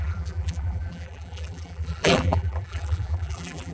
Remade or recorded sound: remade